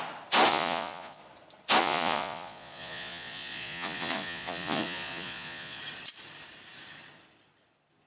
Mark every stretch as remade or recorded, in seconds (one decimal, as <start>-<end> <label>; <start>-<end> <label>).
0.0-0.5 recorded; 0.5-1.2 remade; 1.2-1.8 recorded; 1.8-5.8 remade; 5.8-8.1 recorded